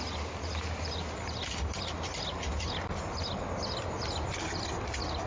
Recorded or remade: recorded